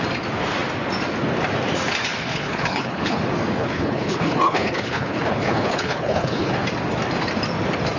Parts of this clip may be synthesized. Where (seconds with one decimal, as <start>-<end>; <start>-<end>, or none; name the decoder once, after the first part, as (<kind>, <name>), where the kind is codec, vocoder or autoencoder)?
2.3-3.2 (codec, HILCodec); 3.6-6.5